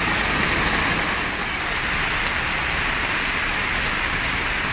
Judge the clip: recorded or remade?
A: recorded